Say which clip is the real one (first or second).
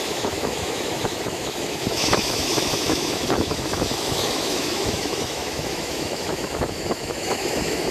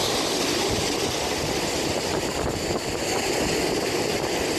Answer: second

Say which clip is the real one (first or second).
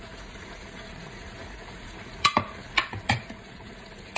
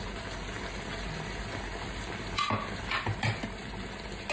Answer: second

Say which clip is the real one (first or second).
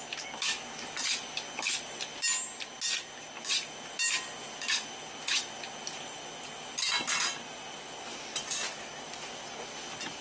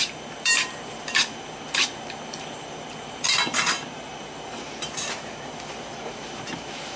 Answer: first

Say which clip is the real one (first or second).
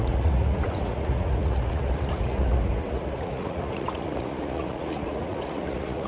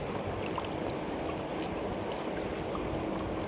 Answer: second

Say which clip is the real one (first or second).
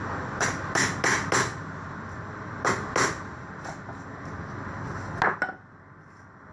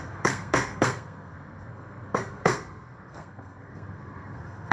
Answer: first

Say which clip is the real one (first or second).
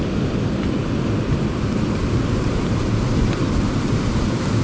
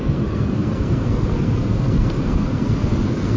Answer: first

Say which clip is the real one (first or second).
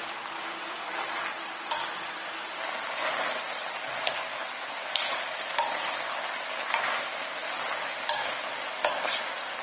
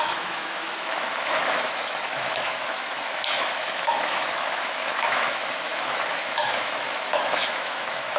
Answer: first